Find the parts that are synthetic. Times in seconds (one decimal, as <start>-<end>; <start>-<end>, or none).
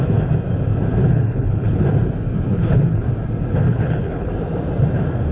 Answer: 1.0-1.8; 2.5-3.1; 3.6-4.3